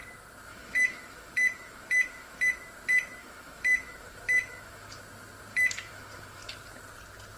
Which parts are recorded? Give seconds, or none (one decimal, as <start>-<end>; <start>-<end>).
0.0-0.5; 2.5-3.2; 5.0-5.5; 6.5-7.4